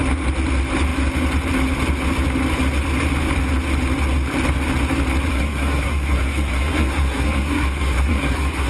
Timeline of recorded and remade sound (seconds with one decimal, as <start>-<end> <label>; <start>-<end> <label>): 0.0-5.3 recorded; 5.3-8.7 remade